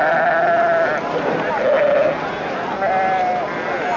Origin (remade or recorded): recorded